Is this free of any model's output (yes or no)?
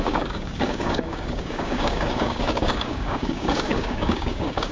no